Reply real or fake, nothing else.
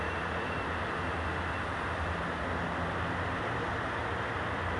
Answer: real